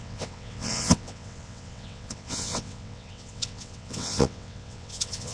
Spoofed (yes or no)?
yes